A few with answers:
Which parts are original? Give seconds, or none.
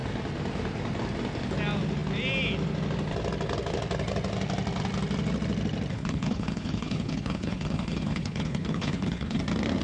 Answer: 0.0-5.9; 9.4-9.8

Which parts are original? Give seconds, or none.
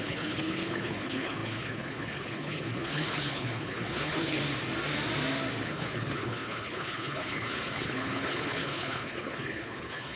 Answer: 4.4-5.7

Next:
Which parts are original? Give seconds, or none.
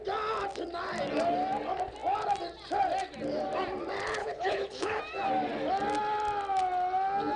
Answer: 0.0-4.2; 5.0-7.4